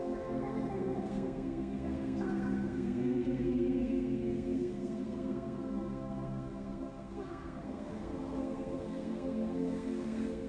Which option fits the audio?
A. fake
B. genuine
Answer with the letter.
A